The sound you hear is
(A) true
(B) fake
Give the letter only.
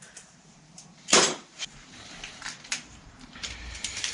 B